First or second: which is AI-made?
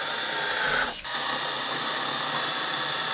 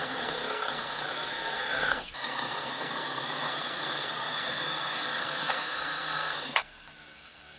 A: second